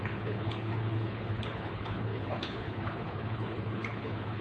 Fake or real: fake